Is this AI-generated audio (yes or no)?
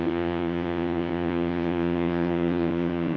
yes